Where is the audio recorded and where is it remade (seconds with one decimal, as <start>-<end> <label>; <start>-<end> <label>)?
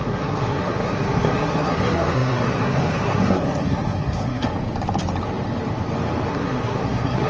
0.0-4.5 remade; 4.5-6.3 recorded; 6.3-7.3 remade